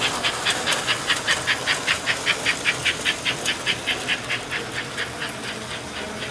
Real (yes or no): yes